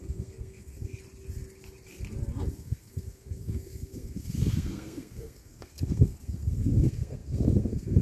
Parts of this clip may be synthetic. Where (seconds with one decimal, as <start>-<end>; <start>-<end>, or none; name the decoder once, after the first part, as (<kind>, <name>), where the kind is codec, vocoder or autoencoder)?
0.0-0.9 (codec, SNAC); 2.5-8.0